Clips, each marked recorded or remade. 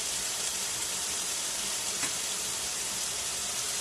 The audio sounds remade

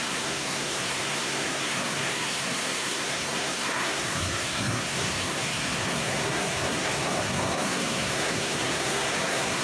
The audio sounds remade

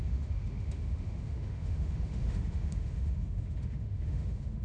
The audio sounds remade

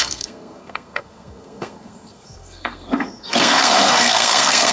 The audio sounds remade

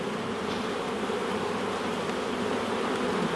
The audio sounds recorded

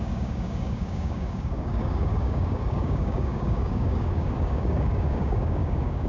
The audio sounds remade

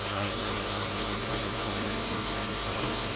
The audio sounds remade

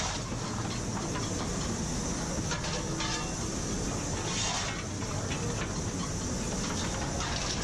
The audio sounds recorded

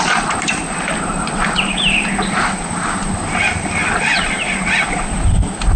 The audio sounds recorded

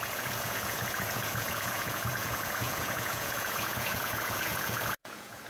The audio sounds remade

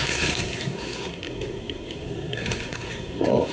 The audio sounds remade